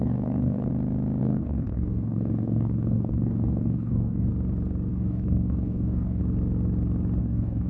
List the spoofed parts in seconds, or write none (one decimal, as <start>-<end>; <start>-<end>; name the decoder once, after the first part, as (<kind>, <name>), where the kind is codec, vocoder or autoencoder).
0.0-0.7 (codec, DAC); 1.2-4.3; 4.9-6.2; 7.2-7.7